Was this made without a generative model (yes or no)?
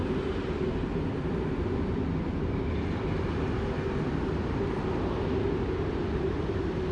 yes